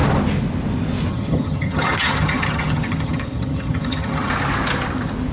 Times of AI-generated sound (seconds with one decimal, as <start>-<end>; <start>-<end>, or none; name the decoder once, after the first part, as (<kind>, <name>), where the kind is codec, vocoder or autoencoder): 1.1-4.3 (vocoder, HiFi-GAN)